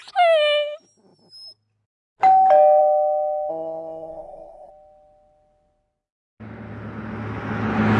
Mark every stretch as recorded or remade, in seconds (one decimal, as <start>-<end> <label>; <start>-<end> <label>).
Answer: 0.0-3.5 recorded; 3.5-4.7 remade; 4.7-8.0 recorded